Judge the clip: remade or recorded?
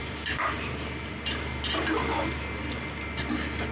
recorded